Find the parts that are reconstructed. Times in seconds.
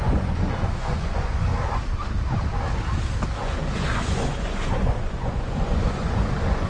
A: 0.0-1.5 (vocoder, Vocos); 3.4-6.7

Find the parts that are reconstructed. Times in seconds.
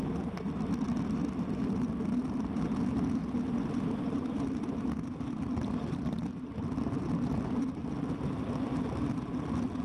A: 1.2-2.5 (vocoder, BigVGAN v2); 3.2-7.0; 7.8-9.0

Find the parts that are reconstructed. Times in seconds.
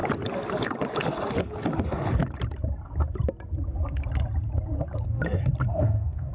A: 5.7-6.3 (autoencoder, DAC-VAE)